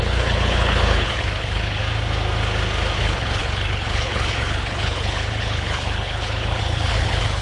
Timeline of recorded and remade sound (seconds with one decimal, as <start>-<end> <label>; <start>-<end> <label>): 0.0-1.8 remade; 1.8-3.0 recorded; 3.0-7.4 remade